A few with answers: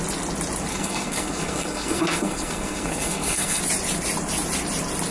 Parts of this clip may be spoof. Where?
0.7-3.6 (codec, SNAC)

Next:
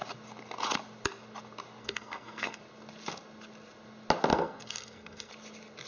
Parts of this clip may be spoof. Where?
1.8-2.6 (codec, SNAC); 4.3-5.3

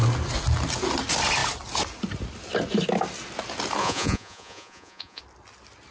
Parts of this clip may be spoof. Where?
3.8-5.2 (vocoder, Vocos)

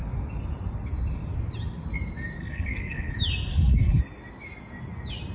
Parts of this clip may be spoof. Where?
2.4-3.1 (codec, SNAC); 3.5-4.0

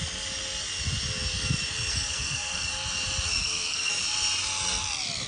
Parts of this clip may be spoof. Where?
1.9-2.7 (codec, SNAC); 3.4-3.9